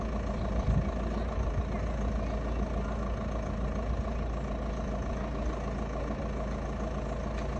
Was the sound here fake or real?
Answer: real